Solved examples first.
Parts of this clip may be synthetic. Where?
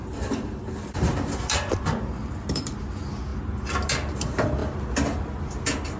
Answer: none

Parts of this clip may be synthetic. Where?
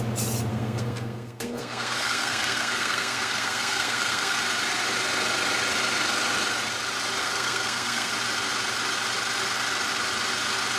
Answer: 0.5-4.4 (codec, SNAC); 7.2-8.1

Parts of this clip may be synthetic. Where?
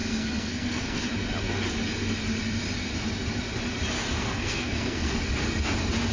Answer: 0.0-1.0 (codec, SNAC); 4.2-5.2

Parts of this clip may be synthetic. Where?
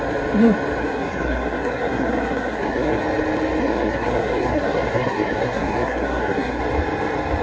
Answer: 0.8-3.0 (codec, SNAC); 3.6-6.6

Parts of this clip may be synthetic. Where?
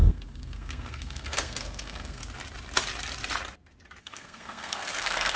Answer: 0.0-2.2 (codec, SNAC); 4.0-5.4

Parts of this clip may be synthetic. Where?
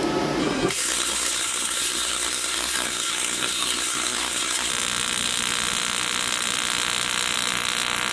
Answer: 0.4-4.7 (codec, SNAC)